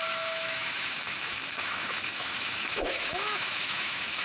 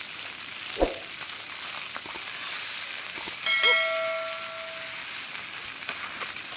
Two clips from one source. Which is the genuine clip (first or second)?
second